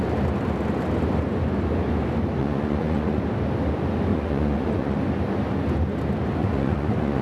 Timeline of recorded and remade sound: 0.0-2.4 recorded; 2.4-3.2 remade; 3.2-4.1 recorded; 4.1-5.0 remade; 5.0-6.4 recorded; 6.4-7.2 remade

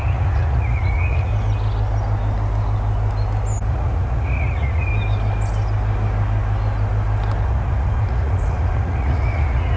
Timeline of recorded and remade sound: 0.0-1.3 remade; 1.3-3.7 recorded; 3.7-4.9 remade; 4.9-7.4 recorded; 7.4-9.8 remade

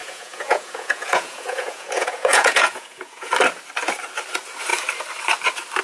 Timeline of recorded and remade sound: 0.0-3.3 remade; 3.3-5.8 recorded